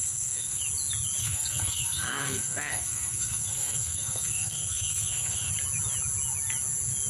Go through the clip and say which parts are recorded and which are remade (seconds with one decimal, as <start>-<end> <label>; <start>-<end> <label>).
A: 0.0-0.6 remade; 0.6-1.2 recorded; 1.2-5.5 remade; 5.5-7.1 recorded